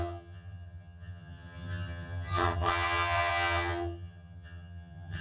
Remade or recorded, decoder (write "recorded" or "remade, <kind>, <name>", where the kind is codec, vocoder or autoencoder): remade, vocoder, HiFi-GAN